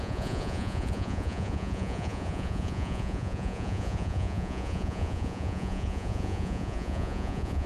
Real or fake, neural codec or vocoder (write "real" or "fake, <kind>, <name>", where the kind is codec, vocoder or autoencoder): fake, vocoder, Vocos